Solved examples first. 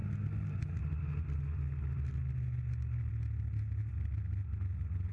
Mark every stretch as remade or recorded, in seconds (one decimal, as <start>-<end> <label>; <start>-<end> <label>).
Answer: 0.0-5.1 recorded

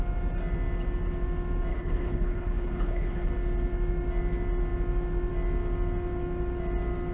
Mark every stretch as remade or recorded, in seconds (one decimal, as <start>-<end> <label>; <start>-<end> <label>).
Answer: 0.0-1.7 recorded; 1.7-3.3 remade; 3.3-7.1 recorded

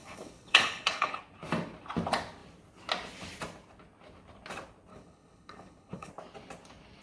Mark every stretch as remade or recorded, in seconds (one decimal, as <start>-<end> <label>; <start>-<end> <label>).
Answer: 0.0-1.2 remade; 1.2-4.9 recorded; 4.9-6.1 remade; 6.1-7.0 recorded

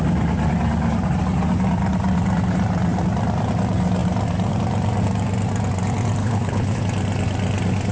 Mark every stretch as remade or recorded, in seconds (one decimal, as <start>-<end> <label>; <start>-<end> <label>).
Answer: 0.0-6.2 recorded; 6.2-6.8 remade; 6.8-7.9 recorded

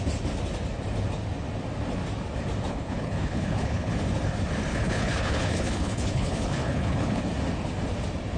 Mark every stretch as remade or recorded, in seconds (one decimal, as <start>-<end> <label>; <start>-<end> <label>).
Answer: 0.0-2.7 recorded; 2.7-3.9 remade; 3.9-4.7 recorded; 4.7-7.2 remade; 7.2-8.4 recorded